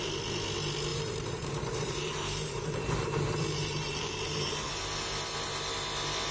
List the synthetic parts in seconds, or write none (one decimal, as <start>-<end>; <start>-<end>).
0.9-4.7